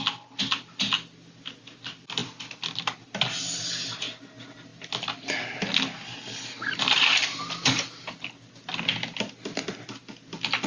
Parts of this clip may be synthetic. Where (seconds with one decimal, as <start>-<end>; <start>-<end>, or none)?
none